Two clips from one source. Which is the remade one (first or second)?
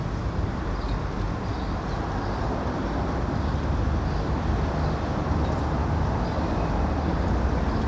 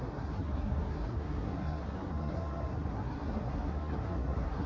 second